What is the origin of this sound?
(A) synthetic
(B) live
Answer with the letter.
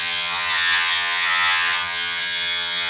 A